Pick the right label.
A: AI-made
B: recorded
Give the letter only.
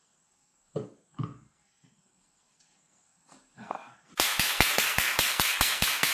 A